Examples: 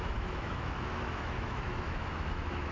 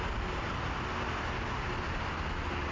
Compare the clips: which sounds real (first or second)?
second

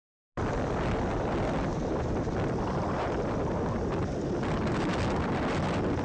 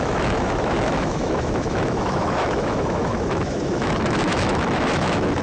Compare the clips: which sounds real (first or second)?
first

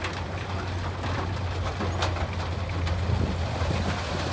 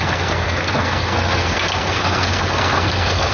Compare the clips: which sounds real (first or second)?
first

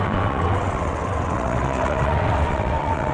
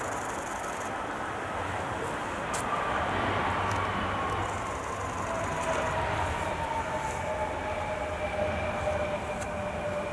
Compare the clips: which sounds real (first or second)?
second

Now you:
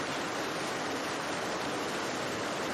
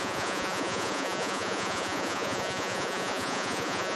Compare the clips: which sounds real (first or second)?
first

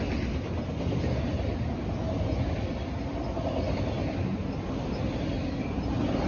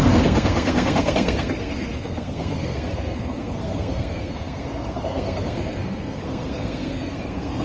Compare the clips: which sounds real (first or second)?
first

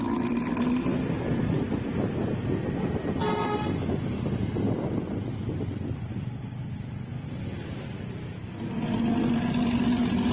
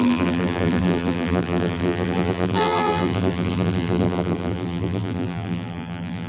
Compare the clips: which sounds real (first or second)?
first